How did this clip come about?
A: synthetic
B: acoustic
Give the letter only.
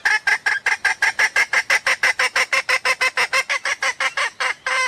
B